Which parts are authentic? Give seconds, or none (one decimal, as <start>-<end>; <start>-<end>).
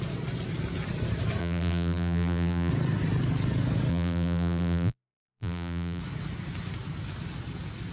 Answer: 0.0-1.4; 2.7-3.9; 6.0-7.9